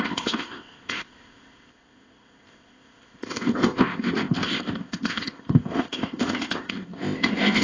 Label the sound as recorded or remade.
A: remade